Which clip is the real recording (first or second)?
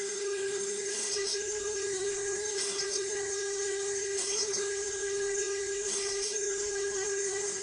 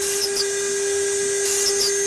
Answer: second